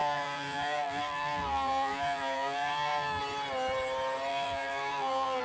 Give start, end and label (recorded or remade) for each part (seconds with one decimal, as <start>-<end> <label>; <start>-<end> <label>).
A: 0.0-3.2 remade; 3.2-4.3 recorded; 4.3-5.4 remade